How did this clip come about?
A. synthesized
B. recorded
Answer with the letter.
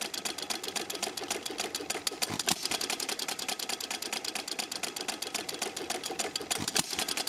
B